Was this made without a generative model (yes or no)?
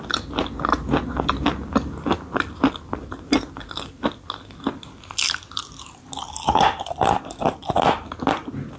yes